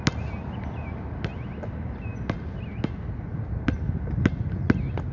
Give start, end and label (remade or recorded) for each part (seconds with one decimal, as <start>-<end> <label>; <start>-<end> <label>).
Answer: 0.0-5.1 recorded